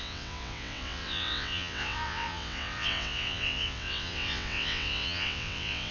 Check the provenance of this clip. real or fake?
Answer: fake